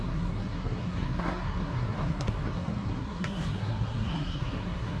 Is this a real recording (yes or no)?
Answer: no